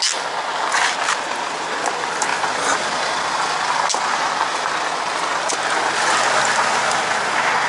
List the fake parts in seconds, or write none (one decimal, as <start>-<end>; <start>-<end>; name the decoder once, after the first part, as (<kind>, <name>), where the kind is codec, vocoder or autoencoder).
none